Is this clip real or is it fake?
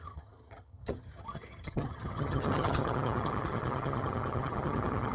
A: fake